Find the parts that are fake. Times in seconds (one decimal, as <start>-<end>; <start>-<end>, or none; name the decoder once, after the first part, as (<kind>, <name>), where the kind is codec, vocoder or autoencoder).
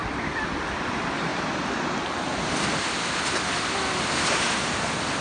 none